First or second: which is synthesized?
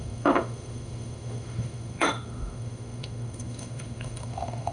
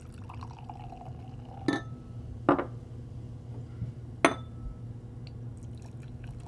first